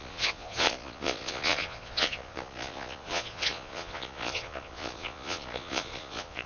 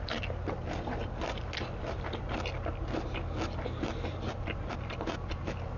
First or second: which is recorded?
second